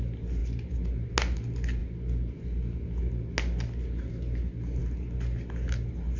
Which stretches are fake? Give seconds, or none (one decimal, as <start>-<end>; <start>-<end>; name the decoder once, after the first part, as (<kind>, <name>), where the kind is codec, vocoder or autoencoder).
none

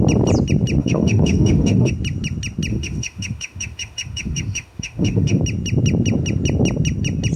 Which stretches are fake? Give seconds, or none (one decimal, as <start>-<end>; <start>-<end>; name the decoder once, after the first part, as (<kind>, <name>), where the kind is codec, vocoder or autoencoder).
0.8-1.9 (autoencoder, DAC-VAE); 2.7-5.4

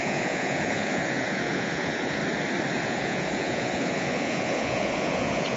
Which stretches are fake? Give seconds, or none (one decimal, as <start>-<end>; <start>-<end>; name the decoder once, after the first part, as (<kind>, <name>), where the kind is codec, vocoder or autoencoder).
0.0-2.2 (vocoder, Vocos); 2.8-5.6

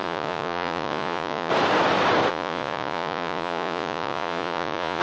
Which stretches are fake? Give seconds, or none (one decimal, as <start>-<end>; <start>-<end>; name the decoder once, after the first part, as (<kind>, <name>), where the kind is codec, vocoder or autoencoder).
0.0-1.5 (vocoder, Vocos); 2.3-5.0

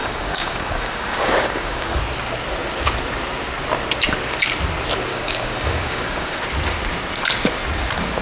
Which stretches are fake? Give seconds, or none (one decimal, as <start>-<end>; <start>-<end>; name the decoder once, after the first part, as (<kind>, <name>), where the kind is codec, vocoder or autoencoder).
0.0-2.0 (codec, DAC); 5.1-6.4

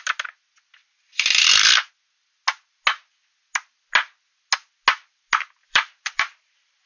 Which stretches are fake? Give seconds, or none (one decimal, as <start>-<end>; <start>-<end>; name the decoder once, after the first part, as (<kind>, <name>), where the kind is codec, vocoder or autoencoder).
5.6-6.9 (vocoder, BigVGAN v2)

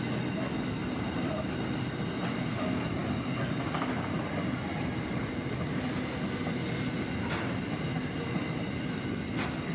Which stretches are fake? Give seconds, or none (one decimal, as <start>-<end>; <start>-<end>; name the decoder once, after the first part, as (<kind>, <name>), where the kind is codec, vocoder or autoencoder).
0.8-1.4 (vocoder, BigVGAN v2)